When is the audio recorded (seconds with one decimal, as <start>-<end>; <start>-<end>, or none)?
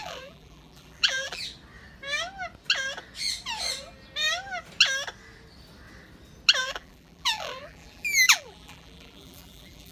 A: 1.4-6.6